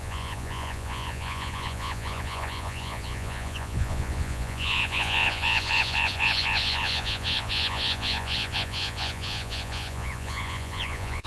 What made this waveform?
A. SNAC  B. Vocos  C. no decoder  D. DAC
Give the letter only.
B